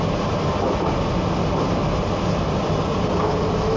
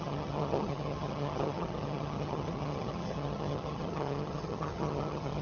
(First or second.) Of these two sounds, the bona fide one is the first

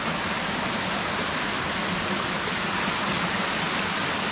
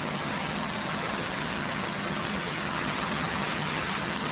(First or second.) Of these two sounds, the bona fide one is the first